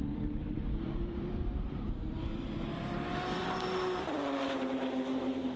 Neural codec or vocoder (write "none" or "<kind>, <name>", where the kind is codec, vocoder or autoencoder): vocoder, BigVGAN v2